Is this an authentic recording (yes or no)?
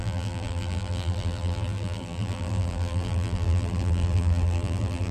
no